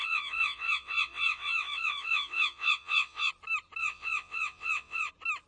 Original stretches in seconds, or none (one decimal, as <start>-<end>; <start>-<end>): 3.3-3.8; 5.1-5.5